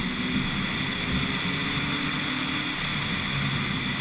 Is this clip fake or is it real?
real